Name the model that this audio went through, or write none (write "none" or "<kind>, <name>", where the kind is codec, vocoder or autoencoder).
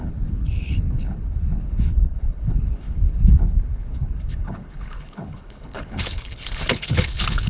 codec, HILCodec